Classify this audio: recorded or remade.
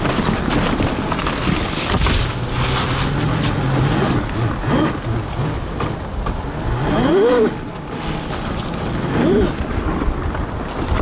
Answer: recorded